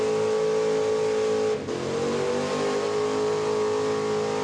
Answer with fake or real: real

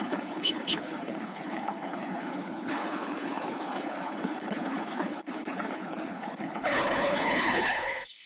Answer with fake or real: fake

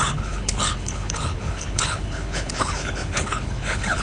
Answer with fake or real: fake